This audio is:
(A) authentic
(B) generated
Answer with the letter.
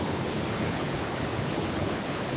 B